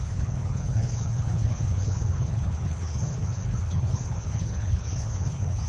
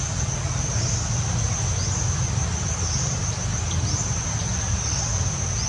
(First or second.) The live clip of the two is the second